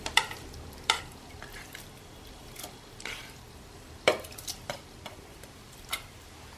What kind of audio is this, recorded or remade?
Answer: remade